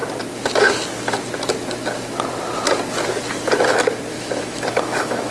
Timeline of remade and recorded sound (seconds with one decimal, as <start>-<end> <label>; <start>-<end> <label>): 0.0-4.1 recorded; 4.1-5.3 remade

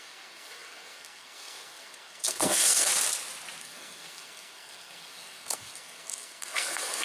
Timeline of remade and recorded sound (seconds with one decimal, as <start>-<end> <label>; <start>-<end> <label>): 0.0-2.9 remade; 2.9-3.6 recorded; 3.6-7.0 remade

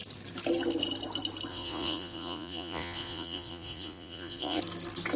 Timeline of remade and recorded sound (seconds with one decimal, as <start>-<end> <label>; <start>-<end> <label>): 0.0-1.5 recorded; 1.5-4.6 remade; 4.6-5.2 recorded